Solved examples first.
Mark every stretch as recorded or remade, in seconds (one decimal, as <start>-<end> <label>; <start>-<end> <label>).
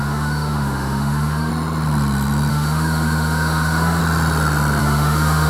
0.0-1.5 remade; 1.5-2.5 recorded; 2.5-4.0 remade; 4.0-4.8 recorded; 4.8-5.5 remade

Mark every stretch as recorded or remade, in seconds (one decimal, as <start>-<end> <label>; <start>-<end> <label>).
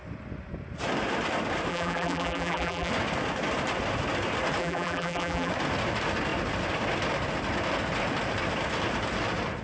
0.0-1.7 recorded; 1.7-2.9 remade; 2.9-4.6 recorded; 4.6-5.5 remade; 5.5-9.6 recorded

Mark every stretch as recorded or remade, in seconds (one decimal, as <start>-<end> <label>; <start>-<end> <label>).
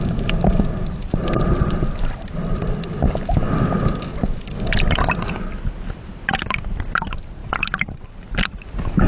0.0-4.1 recorded; 4.1-4.6 remade; 4.6-7.4 recorded; 7.4-8.1 remade; 8.1-9.1 recorded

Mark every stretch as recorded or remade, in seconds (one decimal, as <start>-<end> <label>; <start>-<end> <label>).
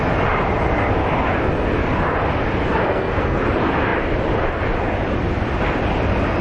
0.0-2.7 recorded; 2.7-3.4 remade; 3.4-6.4 recorded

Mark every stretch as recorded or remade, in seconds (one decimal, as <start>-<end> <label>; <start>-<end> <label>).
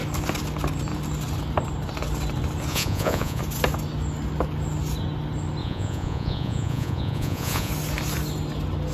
0.0-2.7 recorded; 2.7-3.4 remade; 3.4-5.6 recorded; 5.6-7.7 remade; 7.7-8.9 recorded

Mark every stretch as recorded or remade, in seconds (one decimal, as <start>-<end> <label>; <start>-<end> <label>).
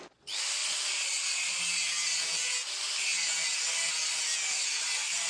0.0-0.6 recorded; 0.6-1.6 remade; 1.6-5.3 recorded